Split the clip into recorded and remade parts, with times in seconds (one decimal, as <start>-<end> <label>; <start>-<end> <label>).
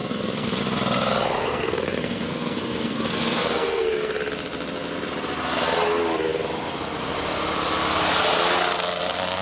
0.0-0.6 remade; 0.6-1.4 recorded; 1.4-4.1 remade; 4.1-9.4 recorded